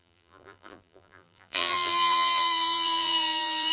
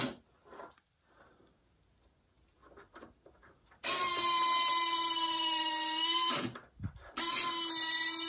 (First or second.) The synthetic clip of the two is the first